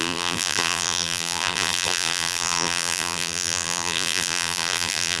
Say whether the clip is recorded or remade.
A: remade